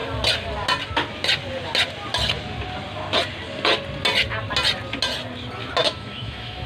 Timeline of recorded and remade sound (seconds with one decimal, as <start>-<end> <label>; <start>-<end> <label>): 0.0-5.8 recorded; 5.8-6.7 remade